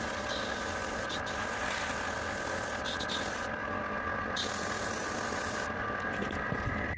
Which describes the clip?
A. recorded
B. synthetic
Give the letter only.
A